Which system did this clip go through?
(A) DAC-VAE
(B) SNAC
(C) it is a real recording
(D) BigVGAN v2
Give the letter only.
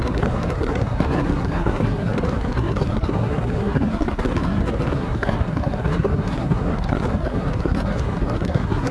B